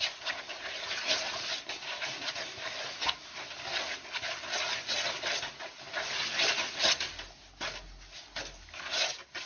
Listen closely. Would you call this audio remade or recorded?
recorded